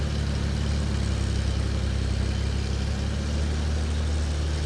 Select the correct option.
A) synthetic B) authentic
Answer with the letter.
B